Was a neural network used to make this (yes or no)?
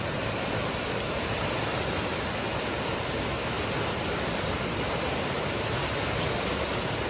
no